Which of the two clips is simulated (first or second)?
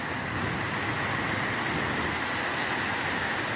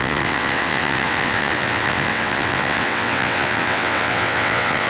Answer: second